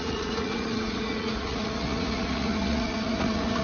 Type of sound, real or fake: fake